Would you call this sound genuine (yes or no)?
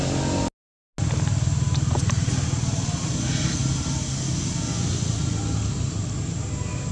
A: yes